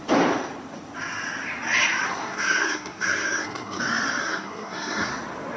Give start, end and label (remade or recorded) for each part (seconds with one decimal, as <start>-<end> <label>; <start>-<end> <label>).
0.0-2.2 recorded; 2.2-3.8 remade; 3.8-4.2 recorded; 4.2-5.1 remade; 5.1-5.6 recorded